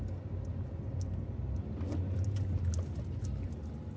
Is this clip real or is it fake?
real